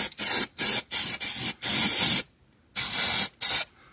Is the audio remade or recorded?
recorded